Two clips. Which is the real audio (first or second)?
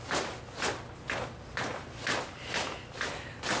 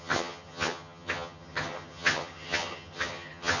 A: first